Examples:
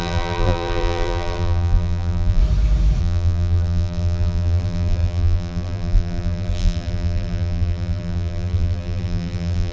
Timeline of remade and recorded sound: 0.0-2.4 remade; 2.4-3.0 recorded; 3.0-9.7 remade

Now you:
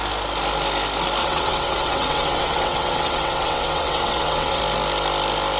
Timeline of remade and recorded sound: 0.0-1.2 recorded; 1.2-4.6 remade; 4.6-5.6 recorded

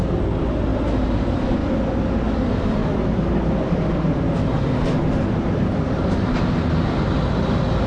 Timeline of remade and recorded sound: 0.0-7.9 recorded

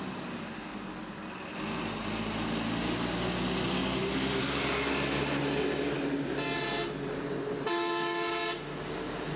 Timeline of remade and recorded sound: 0.0-9.4 recorded

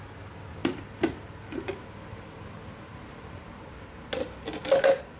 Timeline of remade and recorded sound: 0.0-0.6 recorded; 0.6-2.1 remade; 2.1-2.9 recorded; 2.9-3.6 remade; 3.6-5.2 recorded

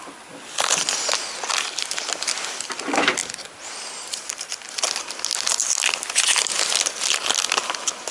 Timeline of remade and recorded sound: 0.0-3.2 recorded; 3.2-5.2 remade; 5.2-8.1 recorded

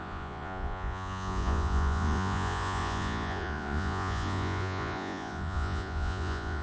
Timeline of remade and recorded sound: 0.0-6.6 remade